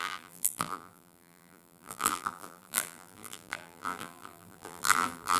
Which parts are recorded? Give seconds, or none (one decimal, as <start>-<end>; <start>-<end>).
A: none